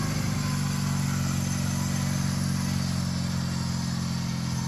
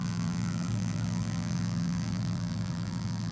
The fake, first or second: second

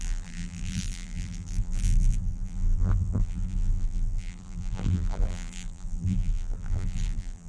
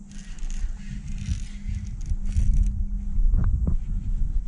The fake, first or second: first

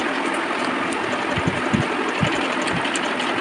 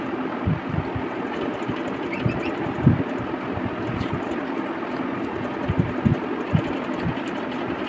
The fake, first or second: first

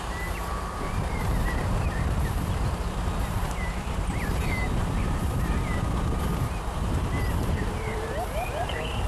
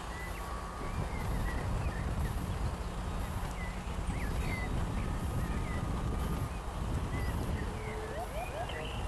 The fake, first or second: first